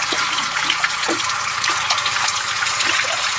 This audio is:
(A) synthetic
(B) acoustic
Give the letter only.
A